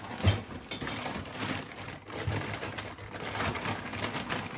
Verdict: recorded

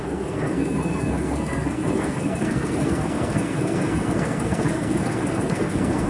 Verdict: remade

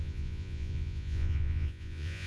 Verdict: remade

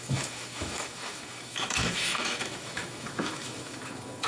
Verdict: remade